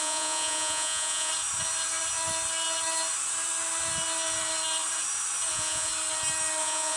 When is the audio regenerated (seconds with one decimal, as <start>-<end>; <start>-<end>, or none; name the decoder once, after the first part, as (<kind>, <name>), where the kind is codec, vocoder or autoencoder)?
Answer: 0.0-1.3 (vocoder, Vocos); 5.5-5.9; 6.6-7.0

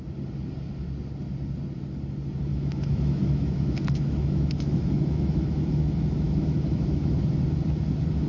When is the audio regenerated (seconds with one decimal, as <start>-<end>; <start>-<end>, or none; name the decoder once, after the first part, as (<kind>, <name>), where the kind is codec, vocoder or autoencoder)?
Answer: 2.5-7.1 (autoencoder, DAC-VAE)

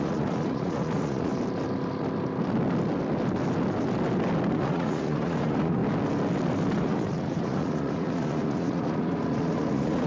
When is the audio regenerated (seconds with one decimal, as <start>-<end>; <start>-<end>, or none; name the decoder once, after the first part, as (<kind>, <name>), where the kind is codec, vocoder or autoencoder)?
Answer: 0.0-1.3 (vocoder, Vocos); 4.5-5.8; 6.8-10.1

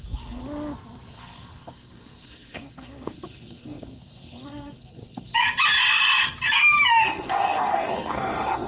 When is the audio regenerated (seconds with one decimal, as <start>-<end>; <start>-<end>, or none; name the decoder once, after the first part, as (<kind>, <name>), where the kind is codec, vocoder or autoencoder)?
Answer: 0.0-0.4 (codec, SNAC); 1.1-5.3; 6.9-8.7

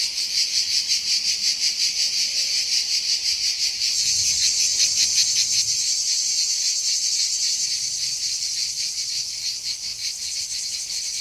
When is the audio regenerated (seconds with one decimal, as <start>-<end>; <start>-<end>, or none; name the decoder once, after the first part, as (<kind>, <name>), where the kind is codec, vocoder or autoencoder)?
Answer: none

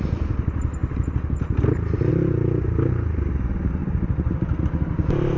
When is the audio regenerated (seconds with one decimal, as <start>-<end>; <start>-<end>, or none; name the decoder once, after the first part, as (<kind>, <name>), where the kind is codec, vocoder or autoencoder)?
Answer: 3.8-4.6 (vocoder, BigVGAN v2)

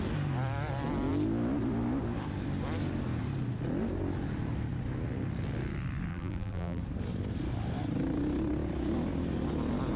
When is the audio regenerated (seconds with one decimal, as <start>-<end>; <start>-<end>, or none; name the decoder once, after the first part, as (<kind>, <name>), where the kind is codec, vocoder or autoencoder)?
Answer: 6.1-6.8 (vocoder, BigVGAN v2)

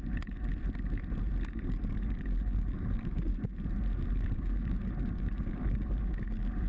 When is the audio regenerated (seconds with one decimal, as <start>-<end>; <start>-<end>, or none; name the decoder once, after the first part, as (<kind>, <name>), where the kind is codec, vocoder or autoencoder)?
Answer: 0.0-0.5 (codec, DAC); 1.5-3.3; 4.1-6.7